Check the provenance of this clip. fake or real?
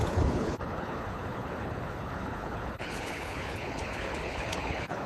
fake